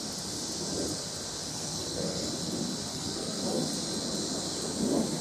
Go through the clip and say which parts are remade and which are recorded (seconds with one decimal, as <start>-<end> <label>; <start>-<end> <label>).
0.0-1.5 recorded; 1.5-2.3 remade; 2.3-2.9 recorded; 2.9-3.7 remade; 3.7-5.2 recorded